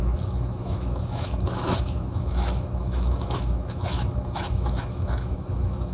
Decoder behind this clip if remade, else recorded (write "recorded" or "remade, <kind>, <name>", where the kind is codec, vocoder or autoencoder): remade, autoencoder, DAC-VAE